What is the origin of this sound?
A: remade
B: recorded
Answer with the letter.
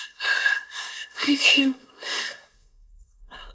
A